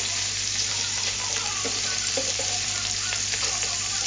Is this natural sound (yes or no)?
no